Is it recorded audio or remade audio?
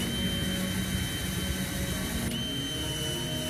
recorded